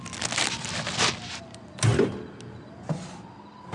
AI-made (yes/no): no